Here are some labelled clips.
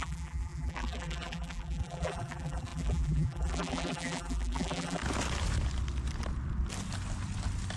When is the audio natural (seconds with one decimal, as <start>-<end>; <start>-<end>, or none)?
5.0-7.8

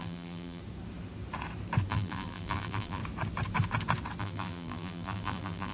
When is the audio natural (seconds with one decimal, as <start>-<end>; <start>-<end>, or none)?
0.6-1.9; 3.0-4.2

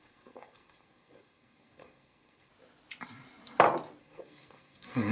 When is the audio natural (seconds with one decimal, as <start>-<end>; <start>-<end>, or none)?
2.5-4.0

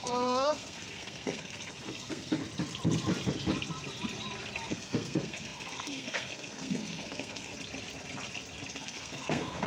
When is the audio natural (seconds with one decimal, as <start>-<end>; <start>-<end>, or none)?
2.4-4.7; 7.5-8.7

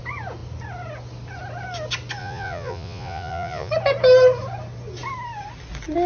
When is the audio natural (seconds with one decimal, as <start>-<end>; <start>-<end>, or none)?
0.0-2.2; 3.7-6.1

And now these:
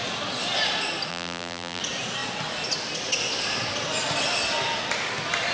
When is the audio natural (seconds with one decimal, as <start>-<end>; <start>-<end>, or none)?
0.0-1.1; 1.8-5.5